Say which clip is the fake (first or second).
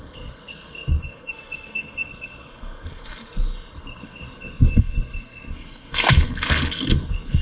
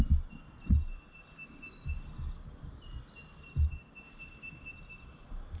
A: first